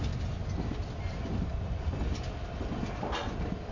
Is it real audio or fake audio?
real